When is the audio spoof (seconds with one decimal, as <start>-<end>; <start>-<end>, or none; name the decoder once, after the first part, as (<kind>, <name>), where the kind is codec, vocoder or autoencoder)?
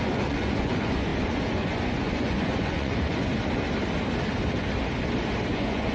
0.0-3.3 (vocoder, Vocos); 5.5-5.9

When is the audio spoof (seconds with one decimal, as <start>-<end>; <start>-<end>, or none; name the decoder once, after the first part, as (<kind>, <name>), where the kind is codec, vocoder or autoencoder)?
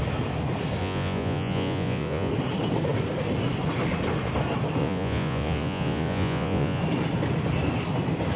0.8-2.3 (vocoder, Vocos); 4.8-6.8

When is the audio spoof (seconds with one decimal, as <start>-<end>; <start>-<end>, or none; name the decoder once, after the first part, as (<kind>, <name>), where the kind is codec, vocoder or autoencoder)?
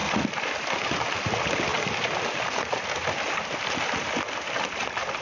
none